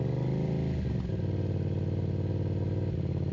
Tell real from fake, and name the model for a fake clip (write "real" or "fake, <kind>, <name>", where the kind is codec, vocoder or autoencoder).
real